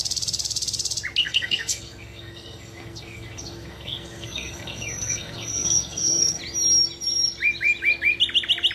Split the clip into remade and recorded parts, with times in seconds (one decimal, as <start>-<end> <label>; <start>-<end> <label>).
0.0-1.2 recorded; 1.2-6.4 remade; 6.4-8.7 recorded